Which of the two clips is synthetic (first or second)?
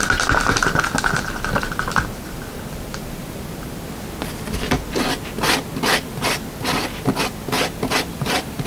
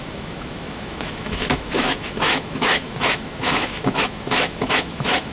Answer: second